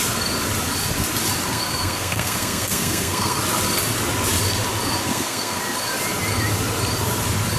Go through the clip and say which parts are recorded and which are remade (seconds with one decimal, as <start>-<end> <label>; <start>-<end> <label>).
0.0-1.5 recorded; 1.5-3.4 remade; 3.4-5.1 recorded; 5.1-5.6 remade; 5.6-7.6 recorded